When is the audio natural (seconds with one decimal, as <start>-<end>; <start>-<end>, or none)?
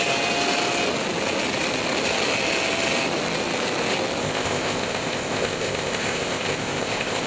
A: 0.0-4.2